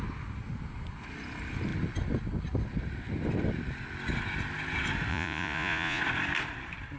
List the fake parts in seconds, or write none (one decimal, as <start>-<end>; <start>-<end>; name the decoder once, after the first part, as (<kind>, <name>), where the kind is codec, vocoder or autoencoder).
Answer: 5.1-6.0 (vocoder, Vocos)